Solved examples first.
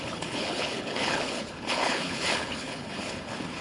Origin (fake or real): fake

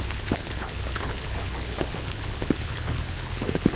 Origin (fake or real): fake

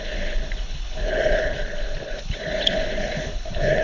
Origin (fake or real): fake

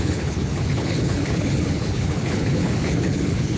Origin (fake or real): fake